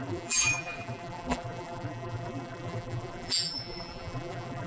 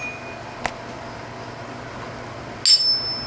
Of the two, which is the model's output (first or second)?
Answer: first